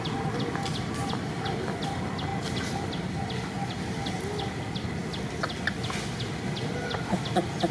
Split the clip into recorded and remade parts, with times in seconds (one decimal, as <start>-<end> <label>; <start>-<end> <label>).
0.0-7.7 recorded